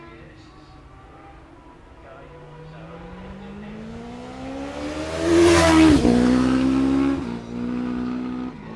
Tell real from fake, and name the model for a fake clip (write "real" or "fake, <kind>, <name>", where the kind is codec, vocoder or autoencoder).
real